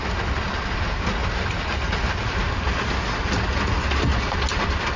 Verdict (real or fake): real